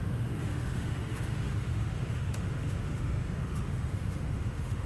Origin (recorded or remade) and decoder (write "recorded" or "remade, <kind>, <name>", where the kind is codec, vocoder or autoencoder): remade, autoencoder, DAC-VAE